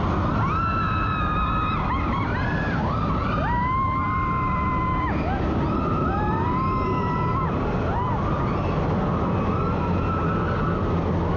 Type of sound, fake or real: real